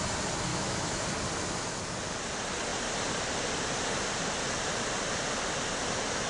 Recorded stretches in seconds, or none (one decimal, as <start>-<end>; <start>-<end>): 0.0-0.5; 1.0-6.3